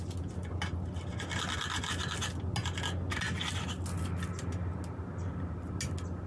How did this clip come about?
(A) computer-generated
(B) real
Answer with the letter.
B